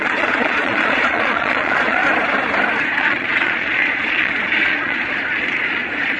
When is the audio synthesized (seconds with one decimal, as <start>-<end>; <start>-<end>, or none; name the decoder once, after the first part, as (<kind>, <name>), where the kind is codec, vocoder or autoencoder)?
0.0-2.0 (vocoder, Vocos); 3.0-6.2